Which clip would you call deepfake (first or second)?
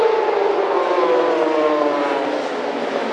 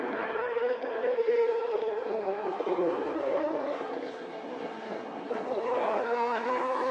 second